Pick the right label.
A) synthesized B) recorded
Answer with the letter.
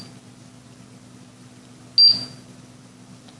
B